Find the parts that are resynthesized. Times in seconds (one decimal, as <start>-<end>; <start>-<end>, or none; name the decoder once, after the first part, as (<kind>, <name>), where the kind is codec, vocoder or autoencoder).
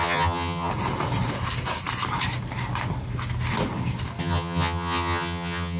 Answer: 0.0-0.7 (vocoder, HiFi-GAN); 4.2-5.8